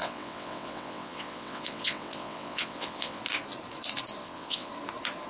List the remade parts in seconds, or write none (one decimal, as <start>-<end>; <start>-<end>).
0.0-3.2; 4.2-4.7